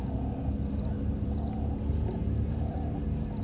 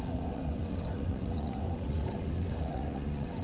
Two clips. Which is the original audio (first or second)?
first